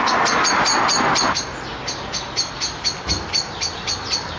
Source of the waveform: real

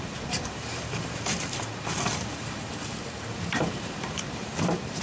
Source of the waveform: fake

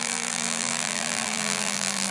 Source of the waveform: fake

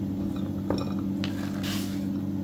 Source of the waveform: real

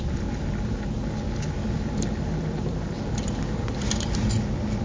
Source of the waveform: real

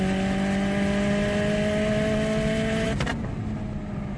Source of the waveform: real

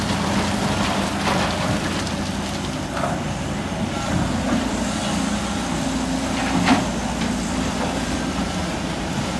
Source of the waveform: real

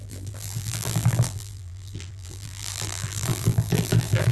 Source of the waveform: fake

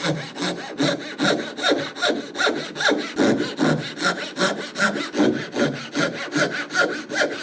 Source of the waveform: real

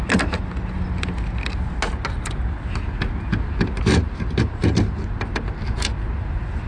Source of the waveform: real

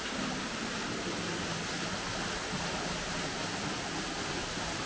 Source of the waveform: real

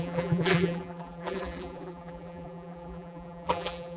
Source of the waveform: fake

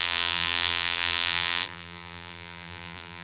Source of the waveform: fake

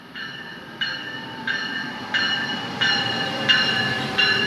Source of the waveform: fake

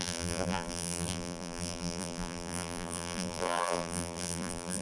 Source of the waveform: fake